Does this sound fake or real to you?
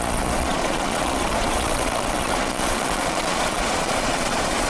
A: fake